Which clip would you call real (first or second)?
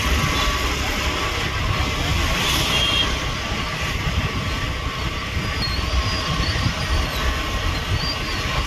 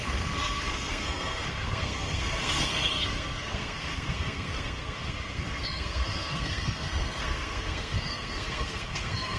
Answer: first